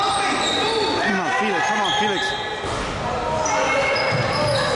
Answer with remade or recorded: recorded